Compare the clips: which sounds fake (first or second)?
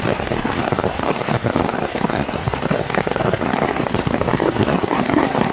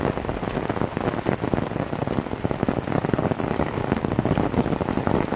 first